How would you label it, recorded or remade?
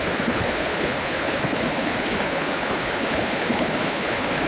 remade